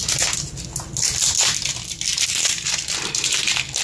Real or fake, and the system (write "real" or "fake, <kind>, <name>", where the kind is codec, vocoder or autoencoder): real